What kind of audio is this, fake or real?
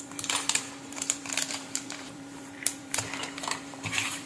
fake